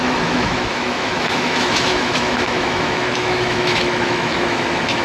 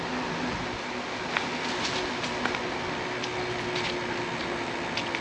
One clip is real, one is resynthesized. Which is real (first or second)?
second